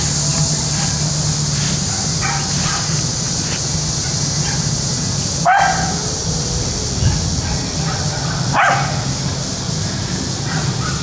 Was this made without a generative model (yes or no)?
yes